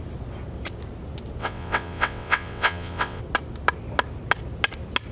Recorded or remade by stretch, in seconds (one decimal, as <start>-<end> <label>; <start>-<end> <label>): 0.0-1.4 recorded; 1.4-3.2 remade; 3.2-5.1 recorded

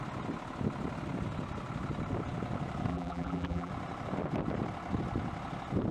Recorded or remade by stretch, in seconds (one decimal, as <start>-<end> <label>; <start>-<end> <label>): 0.0-2.9 recorded; 2.9-3.7 remade; 3.7-5.9 recorded

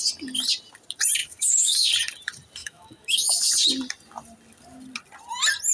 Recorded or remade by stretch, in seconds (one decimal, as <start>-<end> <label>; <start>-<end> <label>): 0.0-1.2 recorded; 1.2-1.9 remade; 1.9-2.6 recorded; 2.6-3.5 remade; 3.5-5.7 recorded